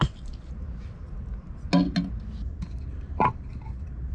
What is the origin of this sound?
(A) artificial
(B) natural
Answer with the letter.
B